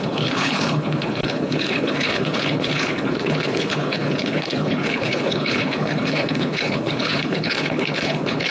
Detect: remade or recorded remade